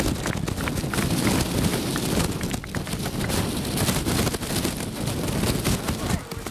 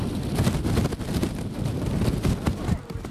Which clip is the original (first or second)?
first